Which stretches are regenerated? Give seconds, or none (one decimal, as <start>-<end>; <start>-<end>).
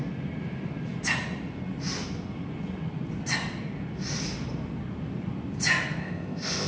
6.0-6.7